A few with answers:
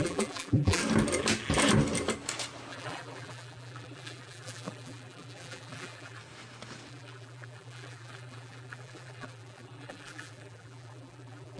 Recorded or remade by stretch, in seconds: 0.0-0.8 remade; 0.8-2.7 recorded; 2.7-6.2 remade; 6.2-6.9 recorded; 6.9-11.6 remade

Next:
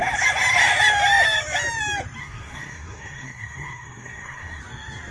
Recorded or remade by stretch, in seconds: 0.0-2.2 recorded; 2.2-4.6 remade; 4.6-5.1 recorded

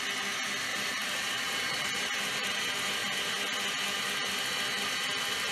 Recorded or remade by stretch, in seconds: 0.0-0.7 recorded; 0.7-2.6 remade; 2.6-5.5 recorded

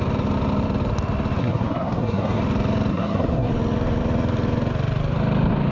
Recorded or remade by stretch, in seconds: 0.0-1.4 recorded; 1.4-2.4 remade; 2.4-2.9 recorded; 2.9-3.5 remade; 3.5-5.7 recorded

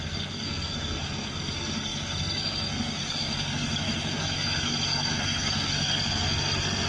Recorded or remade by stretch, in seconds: 0.0-6.9 remade

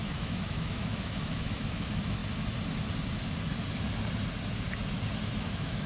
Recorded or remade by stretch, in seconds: 0.0-2.2 remade; 2.2-5.4 recorded; 5.4-5.9 remade

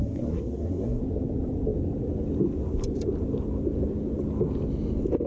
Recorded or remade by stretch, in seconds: 0.0-1.0 remade; 1.0-5.3 recorded